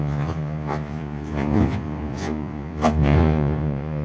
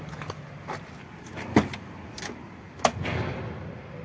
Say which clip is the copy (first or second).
first